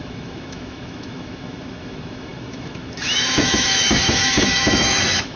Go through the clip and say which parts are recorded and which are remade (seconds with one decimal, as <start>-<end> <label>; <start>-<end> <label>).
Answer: 0.0-5.4 remade